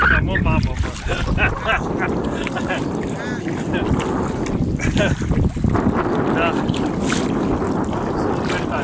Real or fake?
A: real